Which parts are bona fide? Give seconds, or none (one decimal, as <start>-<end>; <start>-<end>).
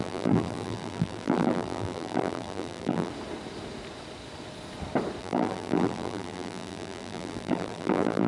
3.1-5.2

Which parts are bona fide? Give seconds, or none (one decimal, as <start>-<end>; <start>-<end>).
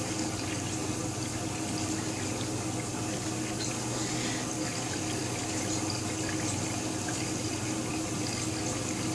0.0-1.0; 3.0-5.2; 7.5-9.1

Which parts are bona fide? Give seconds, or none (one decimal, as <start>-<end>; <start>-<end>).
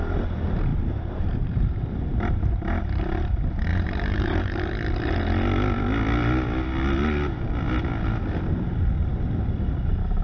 0.0-0.7; 2.8-3.7; 4.6-10.2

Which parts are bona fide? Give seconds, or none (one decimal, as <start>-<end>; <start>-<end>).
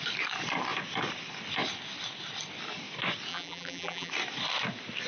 0.0-3.3; 4.1-5.1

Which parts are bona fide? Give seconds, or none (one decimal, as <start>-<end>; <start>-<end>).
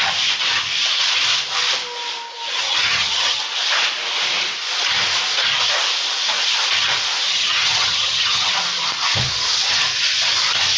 0.0-2.6; 3.4-7.3; 8.5-10.8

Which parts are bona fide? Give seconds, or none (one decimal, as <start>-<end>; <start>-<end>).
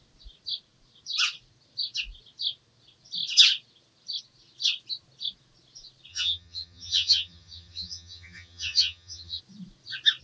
0.0-6.1; 9.4-10.2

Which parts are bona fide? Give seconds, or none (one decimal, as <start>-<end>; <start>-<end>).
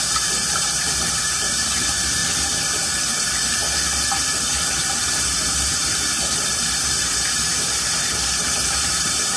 2.2-2.9; 3.6-4.7